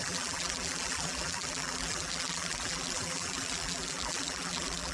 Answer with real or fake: fake